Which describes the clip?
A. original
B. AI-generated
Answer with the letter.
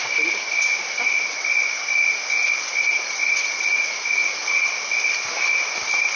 A